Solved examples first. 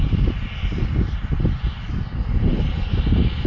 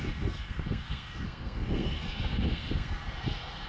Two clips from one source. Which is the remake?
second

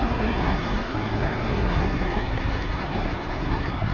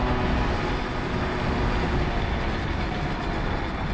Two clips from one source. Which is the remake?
first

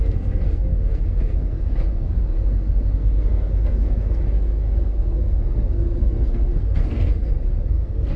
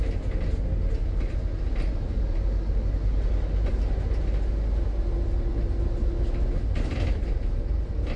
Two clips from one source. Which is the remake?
first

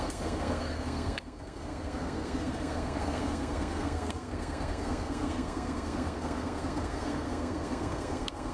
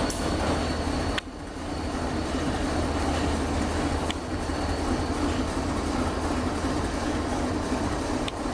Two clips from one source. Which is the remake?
first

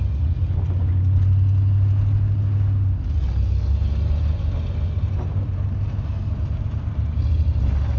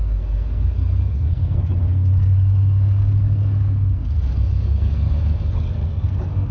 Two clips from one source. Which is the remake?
second